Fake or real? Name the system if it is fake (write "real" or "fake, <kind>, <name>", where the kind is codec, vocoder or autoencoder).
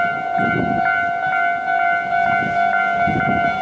real